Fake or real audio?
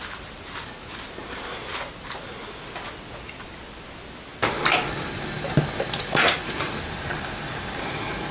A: real